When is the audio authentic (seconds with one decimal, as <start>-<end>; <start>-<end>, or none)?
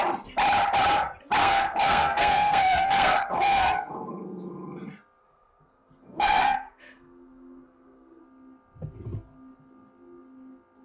0.0-1.4; 4.1-5.2; 8.2-10.8